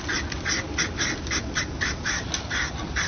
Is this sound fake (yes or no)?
no